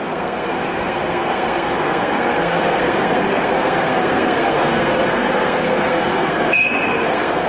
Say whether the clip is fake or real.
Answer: fake